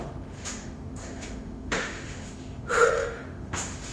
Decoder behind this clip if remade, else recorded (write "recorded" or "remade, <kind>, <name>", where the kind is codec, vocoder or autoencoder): remade, autoencoder, DAC-VAE